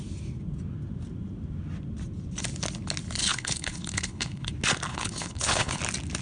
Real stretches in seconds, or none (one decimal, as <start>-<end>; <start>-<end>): 0.0-3.2; 4.5-4.9; 5.8-6.2